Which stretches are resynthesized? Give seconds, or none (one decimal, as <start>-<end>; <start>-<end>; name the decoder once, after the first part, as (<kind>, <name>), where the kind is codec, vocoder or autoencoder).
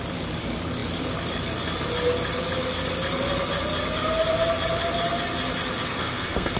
5.9-6.6 (codec, SNAC)